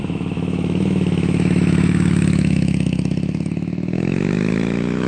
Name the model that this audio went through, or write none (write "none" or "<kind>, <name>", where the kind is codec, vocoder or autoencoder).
autoencoder, DAC-VAE